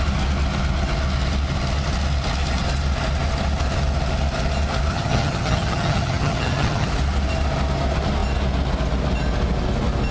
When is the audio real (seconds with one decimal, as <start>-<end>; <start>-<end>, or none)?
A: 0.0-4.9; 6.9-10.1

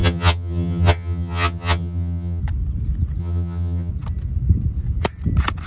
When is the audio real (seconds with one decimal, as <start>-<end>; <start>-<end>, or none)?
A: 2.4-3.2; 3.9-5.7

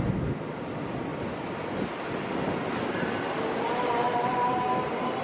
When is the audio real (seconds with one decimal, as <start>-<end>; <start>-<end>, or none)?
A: 0.0-5.2

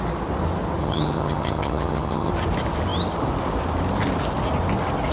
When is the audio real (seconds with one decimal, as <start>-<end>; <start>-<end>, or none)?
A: 0.0-0.8; 2.3-5.1

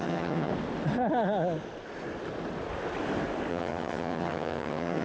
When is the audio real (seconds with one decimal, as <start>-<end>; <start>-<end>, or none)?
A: 0.5-3.5